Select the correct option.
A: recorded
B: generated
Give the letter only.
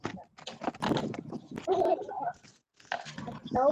A